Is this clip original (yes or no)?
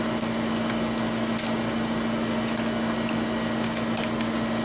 yes